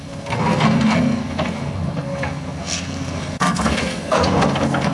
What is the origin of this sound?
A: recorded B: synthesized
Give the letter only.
B